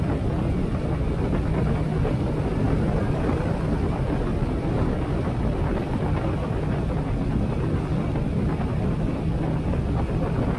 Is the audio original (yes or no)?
yes